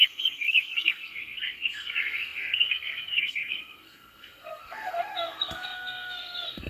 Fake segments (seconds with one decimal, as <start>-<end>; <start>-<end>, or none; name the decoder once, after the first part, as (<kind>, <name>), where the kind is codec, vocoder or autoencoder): 0.0-6.7 (codec, SNAC)